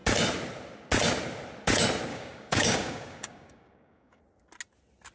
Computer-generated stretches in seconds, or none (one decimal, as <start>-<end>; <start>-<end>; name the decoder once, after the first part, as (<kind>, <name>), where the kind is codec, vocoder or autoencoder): 2.1-4.2 (codec, DAC)